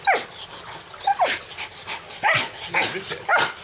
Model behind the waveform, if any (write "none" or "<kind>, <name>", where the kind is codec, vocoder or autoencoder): none